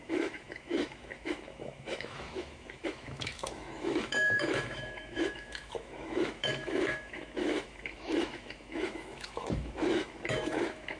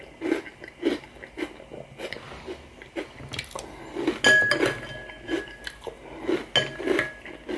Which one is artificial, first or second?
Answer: first